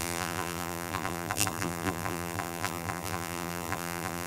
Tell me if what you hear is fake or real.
fake